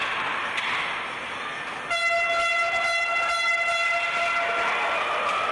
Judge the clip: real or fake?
real